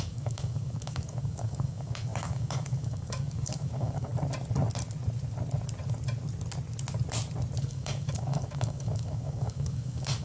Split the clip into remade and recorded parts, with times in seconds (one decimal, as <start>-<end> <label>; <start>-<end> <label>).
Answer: 0.0-4.1 remade; 4.1-7.6 recorded; 7.6-10.2 remade